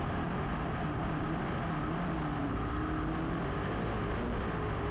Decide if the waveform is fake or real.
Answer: real